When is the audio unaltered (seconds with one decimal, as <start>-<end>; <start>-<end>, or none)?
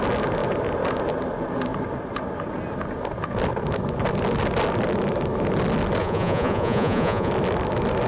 0.0-6.0; 7.3-8.1